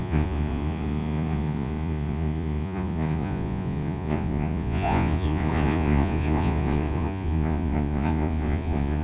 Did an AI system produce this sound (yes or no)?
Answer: yes